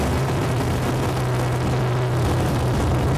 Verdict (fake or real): real